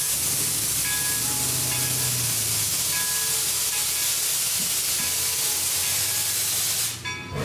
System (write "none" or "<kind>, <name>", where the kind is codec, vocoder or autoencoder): none